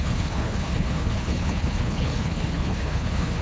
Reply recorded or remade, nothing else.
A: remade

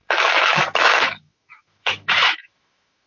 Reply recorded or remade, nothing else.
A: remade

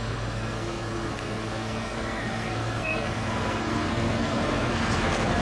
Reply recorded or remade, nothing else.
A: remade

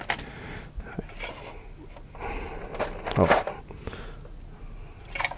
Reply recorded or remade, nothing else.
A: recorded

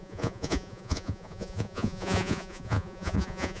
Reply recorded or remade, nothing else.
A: remade